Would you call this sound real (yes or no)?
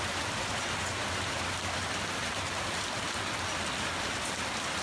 no